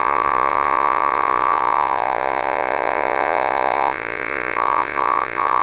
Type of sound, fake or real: fake